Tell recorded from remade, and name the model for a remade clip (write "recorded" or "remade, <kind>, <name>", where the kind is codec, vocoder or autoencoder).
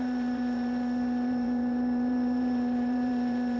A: remade, vocoder, BigVGAN v2